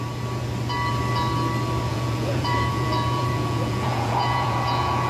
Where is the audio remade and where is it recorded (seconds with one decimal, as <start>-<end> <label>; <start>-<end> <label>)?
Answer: 0.0-1.9 recorded; 1.9-5.1 remade